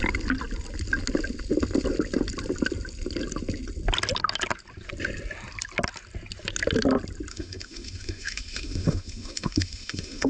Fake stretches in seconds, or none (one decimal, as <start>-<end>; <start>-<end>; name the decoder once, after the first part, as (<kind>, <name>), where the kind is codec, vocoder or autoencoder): 7.3-10.3 (autoencoder, DAC-VAE)